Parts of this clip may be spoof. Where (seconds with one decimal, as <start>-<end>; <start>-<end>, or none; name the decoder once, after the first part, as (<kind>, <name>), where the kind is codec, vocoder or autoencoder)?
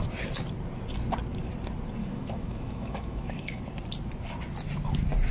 2.0-3.6 (autoencoder, DAC-VAE)